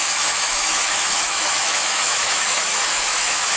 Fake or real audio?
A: fake